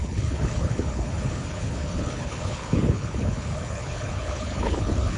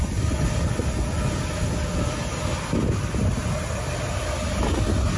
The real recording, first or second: second